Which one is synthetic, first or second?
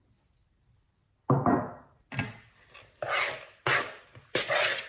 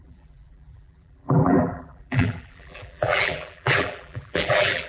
second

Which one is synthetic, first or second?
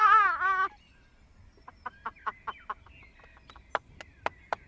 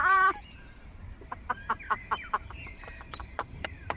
second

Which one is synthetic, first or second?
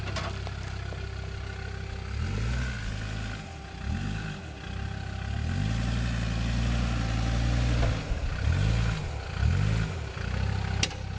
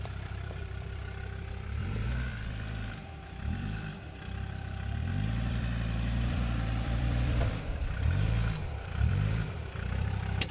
second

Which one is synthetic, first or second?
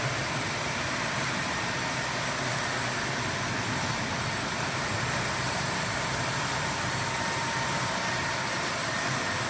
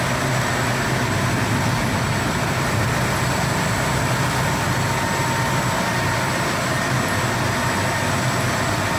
first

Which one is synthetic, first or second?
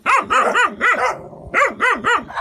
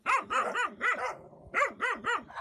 second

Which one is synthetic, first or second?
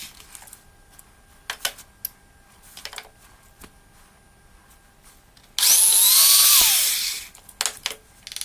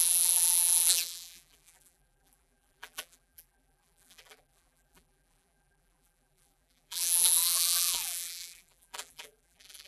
second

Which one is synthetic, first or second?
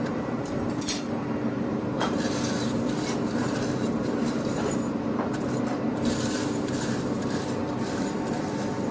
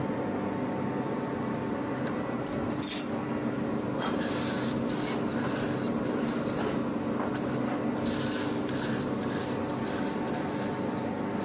first